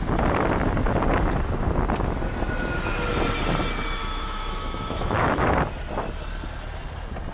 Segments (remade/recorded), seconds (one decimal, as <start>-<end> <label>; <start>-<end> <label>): 0.0-4.0 recorded; 4.0-5.6 remade; 5.6-7.3 recorded